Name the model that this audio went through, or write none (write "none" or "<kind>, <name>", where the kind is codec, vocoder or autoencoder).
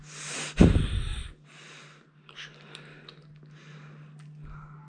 none